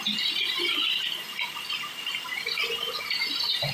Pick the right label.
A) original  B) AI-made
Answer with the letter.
A